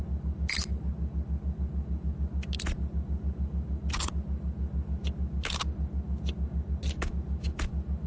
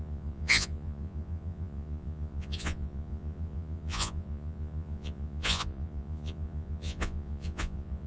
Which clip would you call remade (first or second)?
second